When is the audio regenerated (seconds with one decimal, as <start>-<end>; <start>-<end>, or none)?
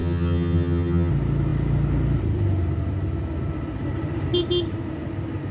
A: 0.0-1.1